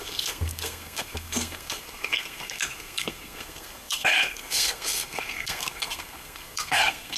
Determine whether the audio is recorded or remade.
remade